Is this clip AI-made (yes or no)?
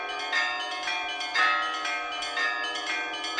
no